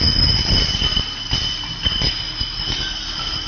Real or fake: real